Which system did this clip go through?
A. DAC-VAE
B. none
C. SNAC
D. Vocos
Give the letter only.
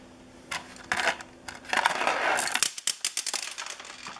B